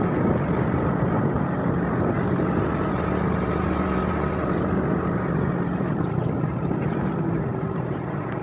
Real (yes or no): yes